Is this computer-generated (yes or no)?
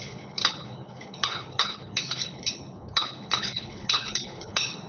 yes